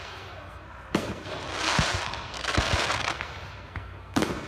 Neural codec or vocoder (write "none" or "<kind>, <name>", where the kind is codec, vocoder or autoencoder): codec, SNAC